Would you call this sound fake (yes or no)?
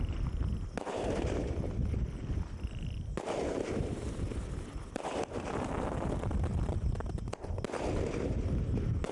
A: no